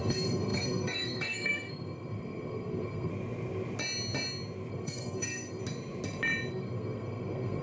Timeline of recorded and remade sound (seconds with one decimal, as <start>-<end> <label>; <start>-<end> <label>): 0.0-3.1 remade; 3.1-4.7 recorded; 4.7-5.6 remade; 5.6-6.5 recorded; 6.5-7.6 remade